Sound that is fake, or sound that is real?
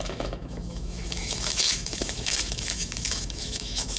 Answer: fake